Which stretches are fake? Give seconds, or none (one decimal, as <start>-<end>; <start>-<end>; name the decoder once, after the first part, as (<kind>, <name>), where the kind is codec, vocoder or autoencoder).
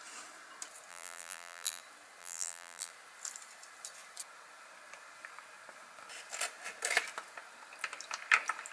0.9-1.8 (vocoder, BigVGAN v2); 2.2-2.9